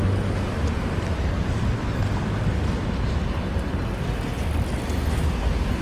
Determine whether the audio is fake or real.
real